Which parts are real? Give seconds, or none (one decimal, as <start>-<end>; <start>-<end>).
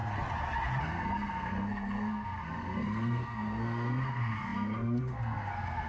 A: 0.0-0.8